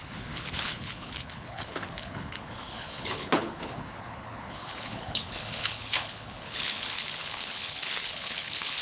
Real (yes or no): no